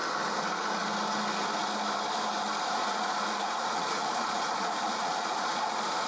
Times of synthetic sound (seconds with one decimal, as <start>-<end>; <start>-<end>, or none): 2.8-6.1